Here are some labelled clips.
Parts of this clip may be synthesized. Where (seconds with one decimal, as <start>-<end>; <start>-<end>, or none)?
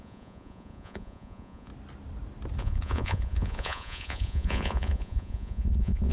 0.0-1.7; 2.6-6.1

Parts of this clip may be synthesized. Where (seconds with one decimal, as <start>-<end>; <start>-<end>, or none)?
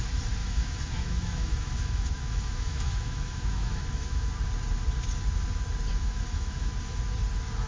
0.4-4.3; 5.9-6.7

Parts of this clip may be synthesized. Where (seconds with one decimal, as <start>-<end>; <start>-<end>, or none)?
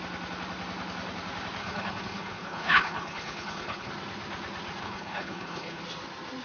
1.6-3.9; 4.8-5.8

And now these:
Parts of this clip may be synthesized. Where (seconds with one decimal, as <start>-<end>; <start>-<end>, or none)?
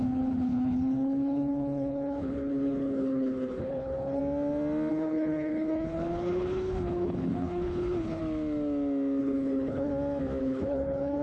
0.0-4.2; 4.9-8.2; 9.2-9.9; 10.4-11.2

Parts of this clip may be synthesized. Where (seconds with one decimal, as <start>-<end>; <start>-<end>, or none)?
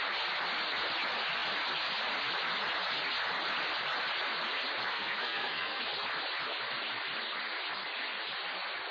4.9-5.8